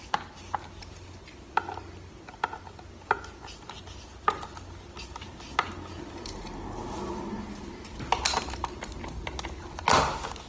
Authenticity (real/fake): real